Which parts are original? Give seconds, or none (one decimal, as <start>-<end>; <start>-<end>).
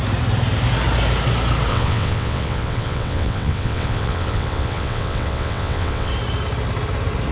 0.0-1.7; 6.1-7.3